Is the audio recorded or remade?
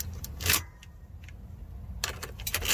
recorded